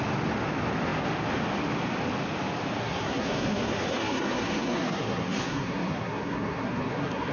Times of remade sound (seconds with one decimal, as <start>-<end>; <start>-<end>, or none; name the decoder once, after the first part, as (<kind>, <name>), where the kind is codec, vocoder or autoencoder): 2.8-7.3 (codec, SNAC)